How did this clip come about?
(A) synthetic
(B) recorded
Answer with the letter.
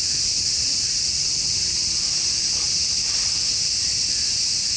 B